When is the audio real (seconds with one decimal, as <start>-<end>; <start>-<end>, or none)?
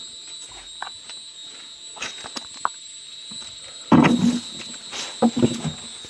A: 0.0-6.1